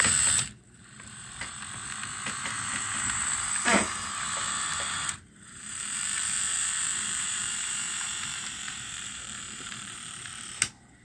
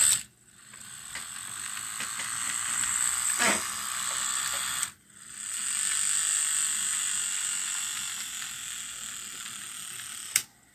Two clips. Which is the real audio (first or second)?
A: second